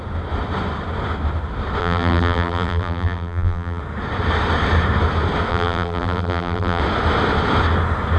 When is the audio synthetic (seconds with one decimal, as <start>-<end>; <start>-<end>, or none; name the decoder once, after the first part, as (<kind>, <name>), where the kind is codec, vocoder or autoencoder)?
1.8-3.8 (vocoder, BigVGAN v2); 5.5-6.8